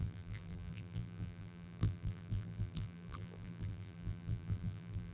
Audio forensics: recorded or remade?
remade